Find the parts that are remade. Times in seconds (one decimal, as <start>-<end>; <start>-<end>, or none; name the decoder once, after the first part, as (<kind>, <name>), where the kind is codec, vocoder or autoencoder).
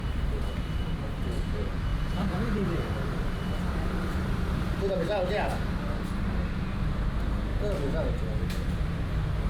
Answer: 1.9-5.0 (vocoder, BigVGAN v2); 7.5-8.9